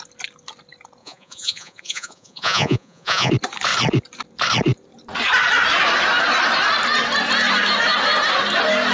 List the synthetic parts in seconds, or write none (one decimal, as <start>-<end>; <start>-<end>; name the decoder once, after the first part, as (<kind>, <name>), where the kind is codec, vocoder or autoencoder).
1.0-3.3 (vocoder, Vocos)